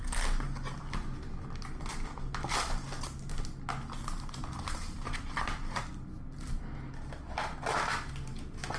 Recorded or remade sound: recorded